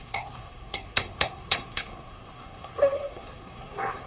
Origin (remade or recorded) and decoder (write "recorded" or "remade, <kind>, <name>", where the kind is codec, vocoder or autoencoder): remade, codec, SNAC